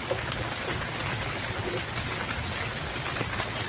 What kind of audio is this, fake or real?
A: real